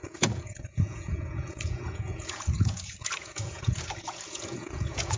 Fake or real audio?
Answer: fake